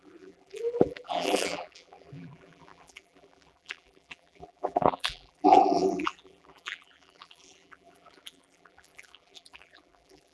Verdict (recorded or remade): remade